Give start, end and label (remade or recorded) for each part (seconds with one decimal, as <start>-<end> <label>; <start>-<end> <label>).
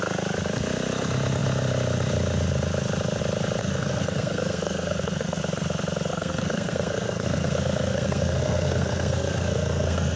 0.0-3.6 recorded; 3.6-5.4 remade; 5.4-6.1 recorded; 6.1-10.2 remade